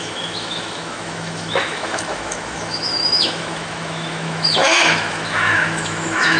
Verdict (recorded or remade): remade